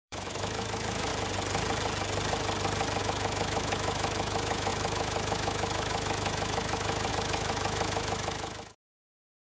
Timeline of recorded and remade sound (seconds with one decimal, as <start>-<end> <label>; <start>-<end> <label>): 0.0-1.1 remade; 1.1-3.0 recorded; 3.0-9.5 remade